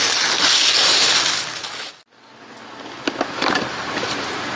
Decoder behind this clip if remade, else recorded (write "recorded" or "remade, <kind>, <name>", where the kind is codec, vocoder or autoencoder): recorded